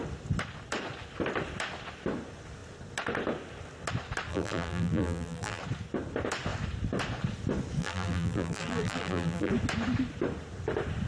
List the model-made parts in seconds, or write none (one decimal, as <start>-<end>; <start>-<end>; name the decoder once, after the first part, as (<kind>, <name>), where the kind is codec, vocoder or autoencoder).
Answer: 4.3-5.6 (vocoder, BigVGAN v2); 7.8-9.5